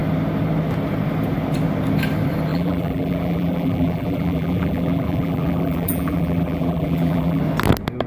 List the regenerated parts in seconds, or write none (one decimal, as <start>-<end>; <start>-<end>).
2.5-7.4